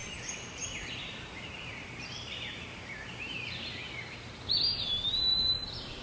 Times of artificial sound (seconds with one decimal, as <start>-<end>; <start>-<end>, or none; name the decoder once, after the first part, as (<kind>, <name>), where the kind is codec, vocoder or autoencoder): 0.0-3.8 (vocoder, BigVGAN v2); 5.3-6.0

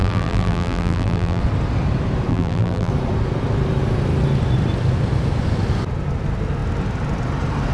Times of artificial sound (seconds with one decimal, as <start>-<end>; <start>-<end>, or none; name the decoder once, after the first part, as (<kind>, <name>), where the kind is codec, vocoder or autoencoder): 0.0-1.4 (vocoder, BigVGAN v2); 2.3-2.9

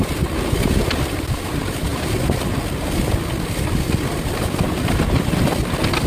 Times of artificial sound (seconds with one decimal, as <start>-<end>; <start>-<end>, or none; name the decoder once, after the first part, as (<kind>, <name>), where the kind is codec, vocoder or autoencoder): none

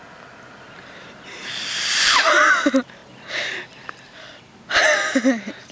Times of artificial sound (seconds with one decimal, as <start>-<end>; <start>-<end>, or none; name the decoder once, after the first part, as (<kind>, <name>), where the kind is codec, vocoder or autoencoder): 0.0-2.5 (vocoder, BigVGAN v2); 3.0-4.4

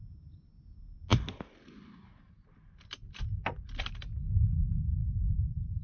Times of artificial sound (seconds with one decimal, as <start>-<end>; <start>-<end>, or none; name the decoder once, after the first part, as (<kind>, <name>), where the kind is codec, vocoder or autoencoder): 5.0-5.8 (vocoder, BigVGAN v2)

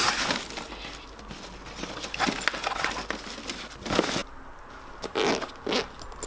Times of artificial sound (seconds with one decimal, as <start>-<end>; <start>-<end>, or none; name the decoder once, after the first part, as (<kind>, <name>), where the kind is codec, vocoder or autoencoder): none

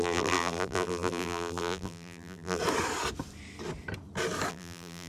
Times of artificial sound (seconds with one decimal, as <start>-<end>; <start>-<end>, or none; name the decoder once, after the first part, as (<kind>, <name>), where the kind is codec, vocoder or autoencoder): 0.0-2.6 (vocoder, BigVGAN v2); 4.5-5.1